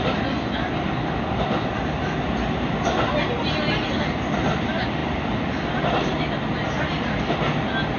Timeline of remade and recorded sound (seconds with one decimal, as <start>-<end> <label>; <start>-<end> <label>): 0.0-8.0 recorded